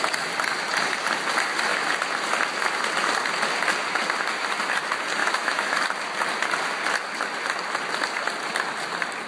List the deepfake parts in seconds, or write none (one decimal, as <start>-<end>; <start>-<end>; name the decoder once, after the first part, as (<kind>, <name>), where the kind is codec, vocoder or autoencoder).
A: 5.2-5.8 (autoencoder, DAC-VAE)